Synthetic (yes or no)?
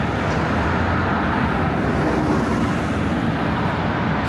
no